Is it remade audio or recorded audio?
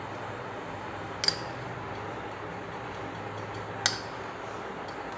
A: recorded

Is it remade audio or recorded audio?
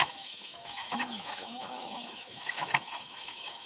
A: remade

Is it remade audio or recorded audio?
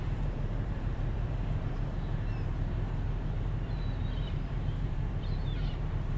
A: remade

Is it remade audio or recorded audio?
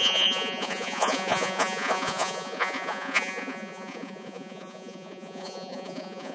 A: remade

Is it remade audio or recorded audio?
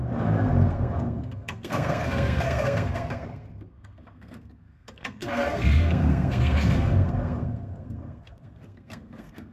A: remade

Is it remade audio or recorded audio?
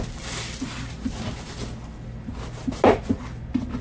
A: recorded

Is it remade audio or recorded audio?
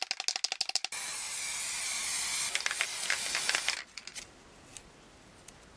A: recorded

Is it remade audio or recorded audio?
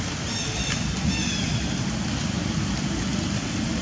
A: recorded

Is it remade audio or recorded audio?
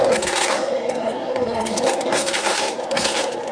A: remade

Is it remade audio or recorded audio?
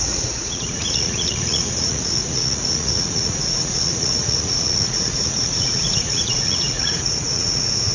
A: remade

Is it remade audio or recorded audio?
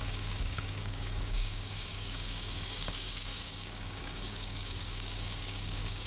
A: remade